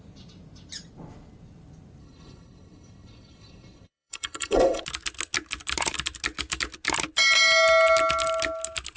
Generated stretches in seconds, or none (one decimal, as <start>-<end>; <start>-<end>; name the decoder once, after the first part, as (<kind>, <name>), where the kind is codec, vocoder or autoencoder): 2.0-4.8 (codec, HILCodec)